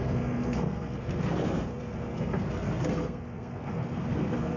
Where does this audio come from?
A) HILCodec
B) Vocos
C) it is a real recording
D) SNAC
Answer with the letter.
D